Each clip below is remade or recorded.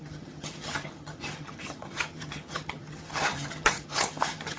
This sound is remade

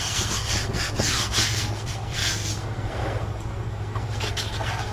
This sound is remade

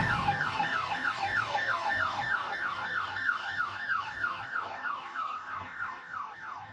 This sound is remade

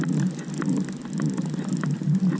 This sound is recorded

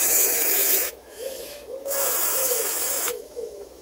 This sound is remade